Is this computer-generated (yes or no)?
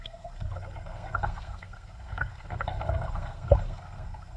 yes